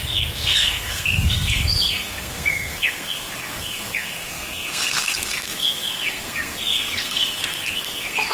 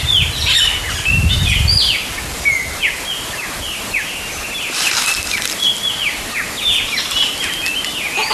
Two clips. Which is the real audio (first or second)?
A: second